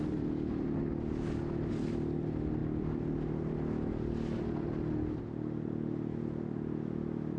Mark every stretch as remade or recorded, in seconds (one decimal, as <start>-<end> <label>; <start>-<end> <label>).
0.0-7.4 recorded